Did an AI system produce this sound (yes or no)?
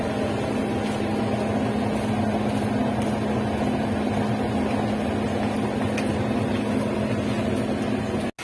no